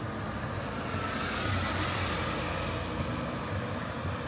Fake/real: real